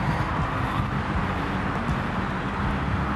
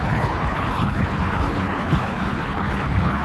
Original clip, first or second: first